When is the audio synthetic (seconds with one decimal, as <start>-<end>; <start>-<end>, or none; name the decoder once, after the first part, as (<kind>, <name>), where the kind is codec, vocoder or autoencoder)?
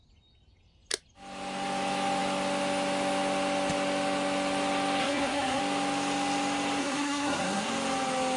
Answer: 5.0-5.6 (codec, SNAC); 6.8-7.7